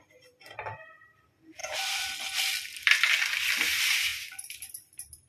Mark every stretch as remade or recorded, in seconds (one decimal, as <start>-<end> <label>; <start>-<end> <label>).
0.0-4.1 recorded; 4.1-5.3 remade